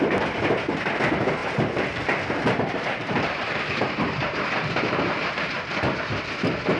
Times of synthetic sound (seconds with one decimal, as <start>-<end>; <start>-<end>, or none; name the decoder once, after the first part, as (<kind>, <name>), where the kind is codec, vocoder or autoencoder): 1.4-5.5 (vocoder, BigVGAN v2)